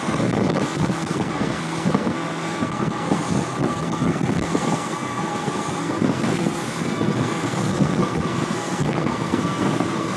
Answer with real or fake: fake